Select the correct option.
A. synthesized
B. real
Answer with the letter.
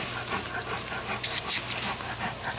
B